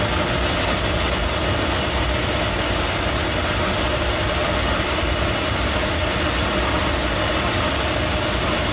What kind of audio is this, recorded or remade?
recorded